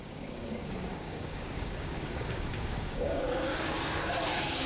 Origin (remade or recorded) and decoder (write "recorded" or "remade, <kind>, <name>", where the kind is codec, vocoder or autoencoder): remade, codec, DAC